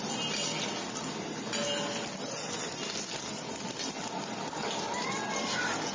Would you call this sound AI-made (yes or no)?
no